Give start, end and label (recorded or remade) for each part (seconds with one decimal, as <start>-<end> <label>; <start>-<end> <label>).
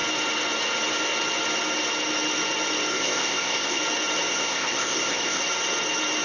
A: 0.0-2.9 recorded; 2.9-3.8 remade; 3.8-4.3 recorded; 4.3-5.4 remade; 5.4-6.2 recorded